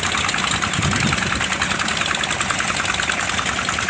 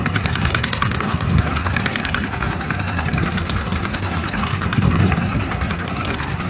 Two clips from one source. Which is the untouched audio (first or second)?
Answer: first